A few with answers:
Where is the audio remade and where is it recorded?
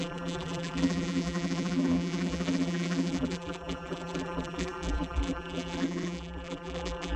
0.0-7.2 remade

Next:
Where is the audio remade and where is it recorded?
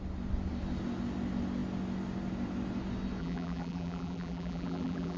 0.0-3.2 recorded; 3.2-5.2 remade